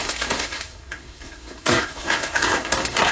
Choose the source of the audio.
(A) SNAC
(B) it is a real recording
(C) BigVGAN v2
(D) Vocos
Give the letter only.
A